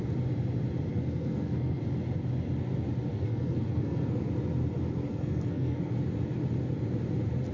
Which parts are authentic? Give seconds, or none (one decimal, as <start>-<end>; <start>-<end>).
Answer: 0.0-0.9; 1.8-3.1; 4.3-5.1; 5.9-7.5